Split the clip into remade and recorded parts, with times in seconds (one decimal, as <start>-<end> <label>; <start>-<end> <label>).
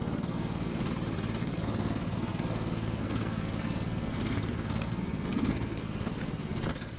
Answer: 0.0-0.7 remade; 0.7-1.4 recorded; 1.4-7.0 remade